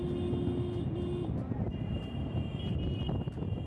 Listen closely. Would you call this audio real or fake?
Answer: real